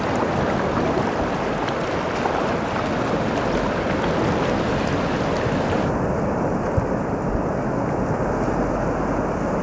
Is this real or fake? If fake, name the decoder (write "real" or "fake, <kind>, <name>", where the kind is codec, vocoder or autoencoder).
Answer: real